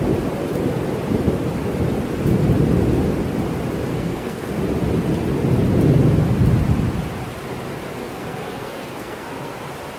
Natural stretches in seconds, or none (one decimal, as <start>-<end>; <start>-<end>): 0.0-3.9; 4.6-8.0; 9.6-10.0